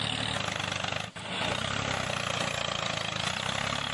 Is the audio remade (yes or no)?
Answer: no